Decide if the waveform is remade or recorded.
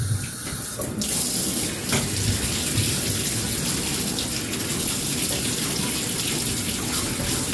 recorded